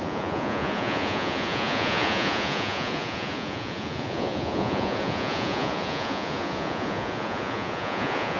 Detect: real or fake fake